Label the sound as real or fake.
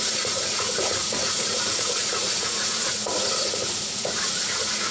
fake